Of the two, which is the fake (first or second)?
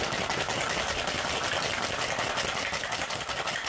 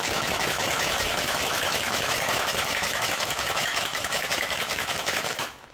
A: second